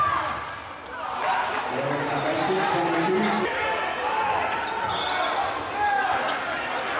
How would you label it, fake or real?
real